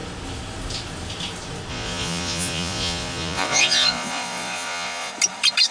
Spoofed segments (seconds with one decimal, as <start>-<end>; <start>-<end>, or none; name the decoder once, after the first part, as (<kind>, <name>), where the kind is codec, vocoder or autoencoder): 1.7-5.1 (vocoder, Vocos)